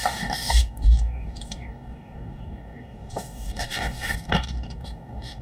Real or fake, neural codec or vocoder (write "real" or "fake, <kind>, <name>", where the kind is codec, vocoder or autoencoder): fake, codec, DAC